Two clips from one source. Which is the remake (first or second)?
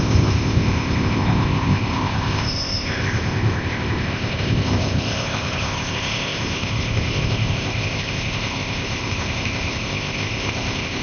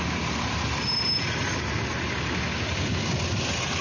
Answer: first